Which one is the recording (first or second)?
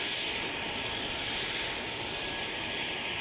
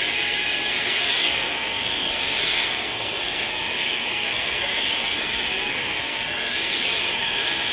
first